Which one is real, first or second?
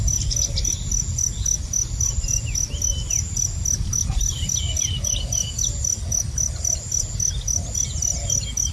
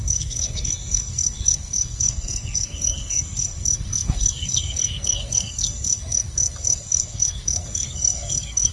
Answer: first